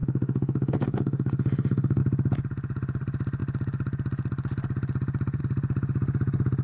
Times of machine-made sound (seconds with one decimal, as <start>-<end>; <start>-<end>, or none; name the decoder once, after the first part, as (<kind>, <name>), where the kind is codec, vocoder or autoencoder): 0.0-2.0 (autoencoder, DAC-VAE)